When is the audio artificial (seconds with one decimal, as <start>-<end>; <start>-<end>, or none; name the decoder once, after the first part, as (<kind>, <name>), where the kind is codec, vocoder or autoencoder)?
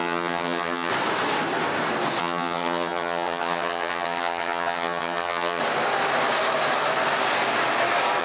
0.0-0.9 (vocoder, HiFi-GAN); 2.2-5.6